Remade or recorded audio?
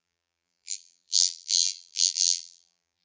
remade